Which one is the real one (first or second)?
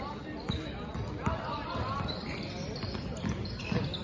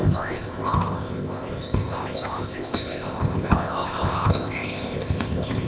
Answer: first